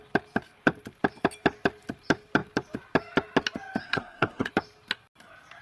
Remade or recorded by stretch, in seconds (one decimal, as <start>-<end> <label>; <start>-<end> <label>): 0.0-3.8 recorded; 3.8-4.5 remade; 4.5-5.6 recorded

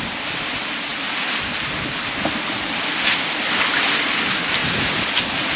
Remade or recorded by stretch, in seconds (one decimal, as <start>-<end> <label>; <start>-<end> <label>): 0.0-5.6 recorded

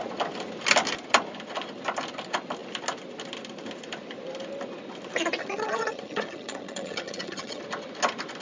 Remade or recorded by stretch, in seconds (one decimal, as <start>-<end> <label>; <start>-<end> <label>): 0.0-5.4 recorded; 5.4-7.6 remade; 7.6-8.4 recorded

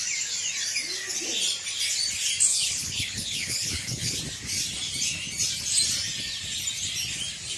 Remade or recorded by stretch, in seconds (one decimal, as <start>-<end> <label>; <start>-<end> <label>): 0.0-2.5 recorded; 2.5-4.2 remade; 4.2-7.6 recorded